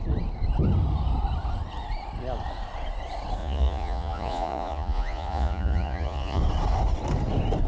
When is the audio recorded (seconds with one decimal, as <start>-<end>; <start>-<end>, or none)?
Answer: 0.0-3.4; 6.4-7.7